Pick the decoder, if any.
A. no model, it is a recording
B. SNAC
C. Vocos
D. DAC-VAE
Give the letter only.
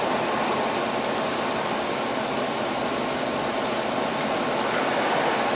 A